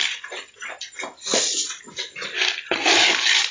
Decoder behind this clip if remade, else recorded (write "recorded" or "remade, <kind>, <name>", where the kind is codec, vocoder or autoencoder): recorded